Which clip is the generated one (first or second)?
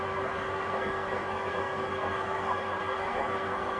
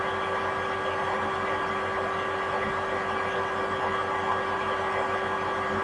first